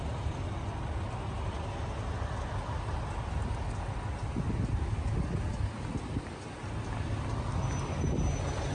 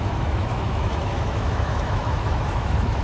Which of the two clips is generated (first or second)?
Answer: second